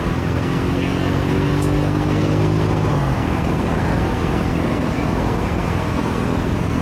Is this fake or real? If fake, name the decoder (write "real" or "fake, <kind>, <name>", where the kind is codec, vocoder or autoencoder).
fake, codec, SNAC